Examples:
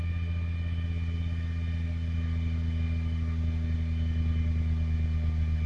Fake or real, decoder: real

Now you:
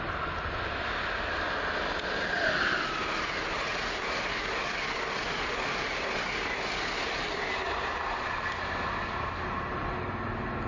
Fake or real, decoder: real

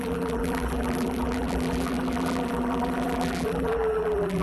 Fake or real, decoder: fake, vocoder, BigVGAN v2